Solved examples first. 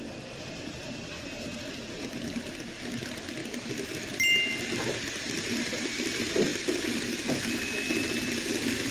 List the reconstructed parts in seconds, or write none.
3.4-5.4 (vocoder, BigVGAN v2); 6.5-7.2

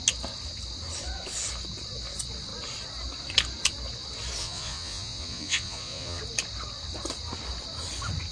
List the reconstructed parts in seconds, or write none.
4.4-6.2 (vocoder, Vocos)